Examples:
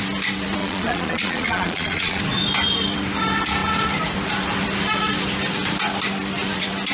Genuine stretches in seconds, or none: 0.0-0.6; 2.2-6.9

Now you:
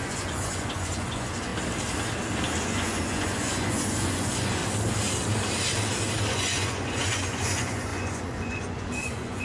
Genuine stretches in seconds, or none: 1.5-2.6; 4.6-6.3

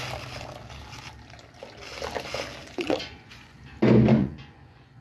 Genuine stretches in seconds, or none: 0.0-2.6; 3.6-4.2

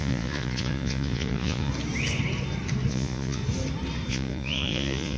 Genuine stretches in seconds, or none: 1.7-2.9; 3.4-4.1